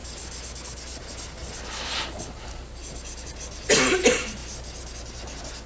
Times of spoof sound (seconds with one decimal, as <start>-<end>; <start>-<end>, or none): none